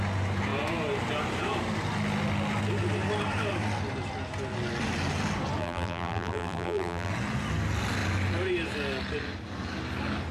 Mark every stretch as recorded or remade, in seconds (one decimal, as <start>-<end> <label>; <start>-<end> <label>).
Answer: 0.0-5.6 recorded; 5.6-7.1 remade; 7.1-10.3 recorded